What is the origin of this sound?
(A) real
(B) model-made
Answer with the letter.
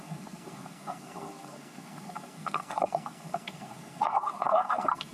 B